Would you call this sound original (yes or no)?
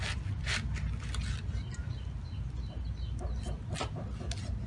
yes